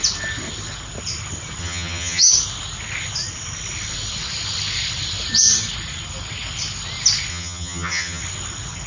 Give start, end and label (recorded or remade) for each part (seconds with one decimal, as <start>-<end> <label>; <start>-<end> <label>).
0.0-1.6 recorded; 1.6-2.3 remade; 2.3-7.3 recorded; 7.3-8.2 remade; 8.2-8.9 recorded

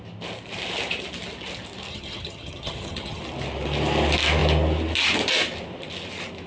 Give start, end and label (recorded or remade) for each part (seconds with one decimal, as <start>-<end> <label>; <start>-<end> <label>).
0.0-1.9 recorded; 1.9-3.2 remade; 3.2-6.5 recorded

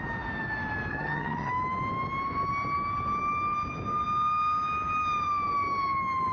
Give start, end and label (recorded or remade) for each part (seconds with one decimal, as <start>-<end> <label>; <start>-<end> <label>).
0.0-0.9 recorded; 0.9-1.5 remade; 1.5-6.3 recorded

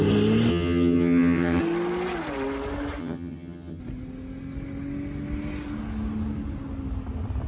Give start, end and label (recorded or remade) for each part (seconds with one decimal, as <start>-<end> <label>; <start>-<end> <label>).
0.0-0.5 recorded; 0.5-1.6 remade; 1.6-3.0 recorded; 3.0-3.8 remade; 3.8-7.5 recorded

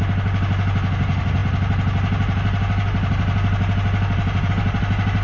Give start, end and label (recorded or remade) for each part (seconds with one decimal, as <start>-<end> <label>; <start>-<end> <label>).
0.0-5.2 recorded

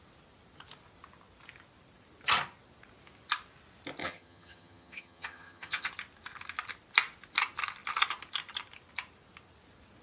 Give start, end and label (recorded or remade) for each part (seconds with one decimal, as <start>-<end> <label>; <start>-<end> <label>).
0.0-4.0 recorded; 4.0-5.9 remade; 5.9-10.0 recorded

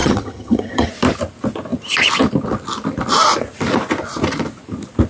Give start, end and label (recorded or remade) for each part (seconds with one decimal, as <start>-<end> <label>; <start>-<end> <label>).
0.0-0.9 remade; 0.9-5.1 recorded

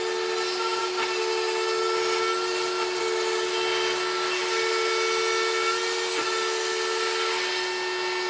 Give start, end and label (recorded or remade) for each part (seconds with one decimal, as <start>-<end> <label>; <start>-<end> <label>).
0.0-8.3 recorded